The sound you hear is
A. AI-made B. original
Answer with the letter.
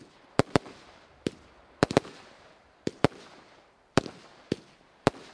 A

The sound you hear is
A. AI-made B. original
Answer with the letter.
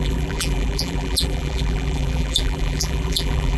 A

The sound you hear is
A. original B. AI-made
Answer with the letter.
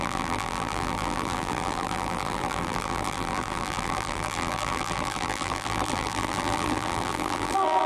B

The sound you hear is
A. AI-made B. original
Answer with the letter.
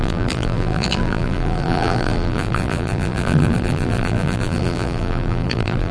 A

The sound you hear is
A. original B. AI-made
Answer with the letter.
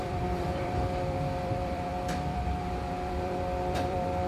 B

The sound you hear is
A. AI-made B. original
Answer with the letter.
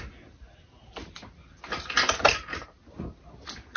B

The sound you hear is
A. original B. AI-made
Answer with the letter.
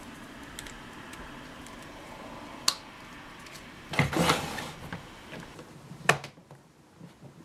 A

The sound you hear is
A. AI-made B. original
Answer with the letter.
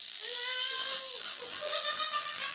A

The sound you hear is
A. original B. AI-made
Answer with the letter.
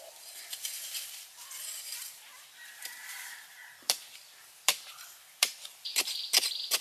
B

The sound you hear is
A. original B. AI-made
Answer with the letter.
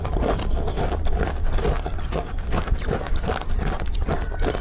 A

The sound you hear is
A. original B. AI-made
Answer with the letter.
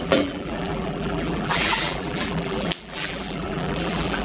B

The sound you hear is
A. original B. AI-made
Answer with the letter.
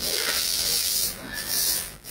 B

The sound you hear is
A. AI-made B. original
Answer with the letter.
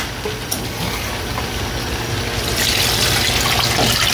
B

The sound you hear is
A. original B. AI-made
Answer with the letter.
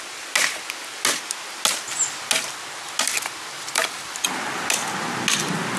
A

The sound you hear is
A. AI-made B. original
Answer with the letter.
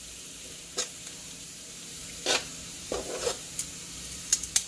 A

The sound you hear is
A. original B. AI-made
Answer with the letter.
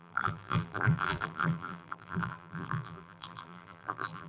B